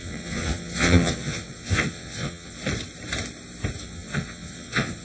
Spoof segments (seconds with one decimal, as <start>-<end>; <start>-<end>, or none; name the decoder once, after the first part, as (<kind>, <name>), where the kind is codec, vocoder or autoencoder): 0.0-2.6 (vocoder, WaveNeXt); 3.8-5.0